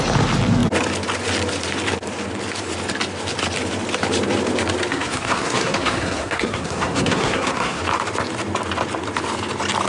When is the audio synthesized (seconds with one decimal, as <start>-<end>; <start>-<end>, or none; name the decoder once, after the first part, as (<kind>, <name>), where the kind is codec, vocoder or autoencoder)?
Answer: 4.9-7.8 (codec, SNAC)